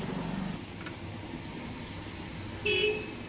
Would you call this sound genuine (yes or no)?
yes